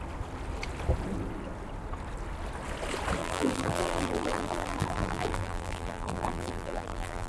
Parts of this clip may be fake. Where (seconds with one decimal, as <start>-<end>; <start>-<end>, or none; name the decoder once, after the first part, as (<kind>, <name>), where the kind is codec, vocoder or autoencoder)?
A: 3.2-7.3 (vocoder, BigVGAN v2)